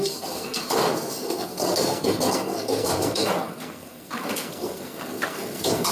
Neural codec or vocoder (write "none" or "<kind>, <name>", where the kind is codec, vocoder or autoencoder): codec, SNAC